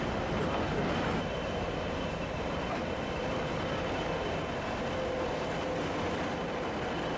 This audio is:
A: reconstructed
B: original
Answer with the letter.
B